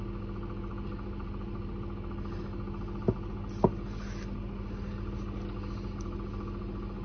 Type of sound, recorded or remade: recorded